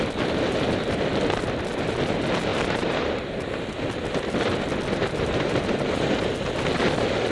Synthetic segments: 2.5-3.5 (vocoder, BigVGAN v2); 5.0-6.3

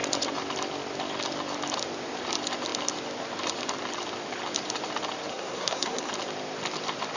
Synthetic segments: 5.3-6.1 (codec, SNAC)

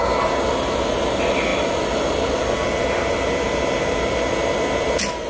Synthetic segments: none

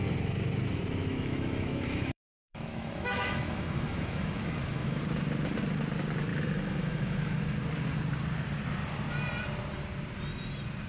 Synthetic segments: 1.0-5.0 (autoencoder, DAC-VAE); 6.3-7.4

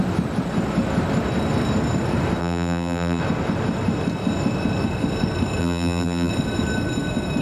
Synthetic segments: 2.4-3.2 (vocoder, BigVGAN v2); 5.6-6.3

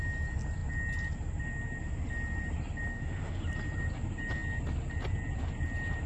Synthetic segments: 2.9-3.4 (autoencoder, DAC-VAE)

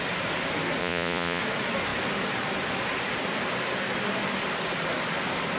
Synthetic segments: 0.8-1.4 (vocoder, Vocos)

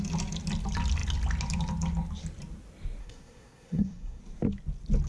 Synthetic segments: 3.0-4.2 (codec, SNAC)